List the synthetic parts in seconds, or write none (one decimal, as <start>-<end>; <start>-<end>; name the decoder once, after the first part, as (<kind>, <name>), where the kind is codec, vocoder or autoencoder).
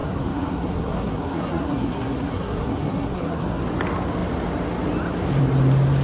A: 0.0-3.6 (codec, SNAC)